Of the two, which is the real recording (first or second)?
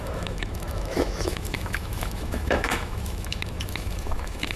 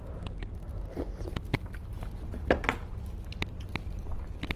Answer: second